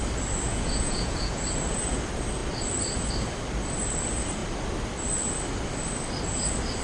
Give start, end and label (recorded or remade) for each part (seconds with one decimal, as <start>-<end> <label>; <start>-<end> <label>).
0.0-0.5 recorded; 0.5-1.4 remade; 1.4-6.8 recorded